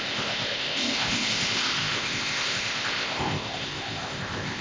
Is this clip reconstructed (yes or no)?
yes